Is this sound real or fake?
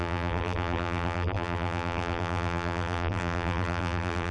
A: fake